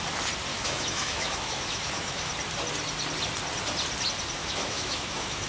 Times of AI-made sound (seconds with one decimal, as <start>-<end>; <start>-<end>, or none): 0.5-2.3; 4.4-5.5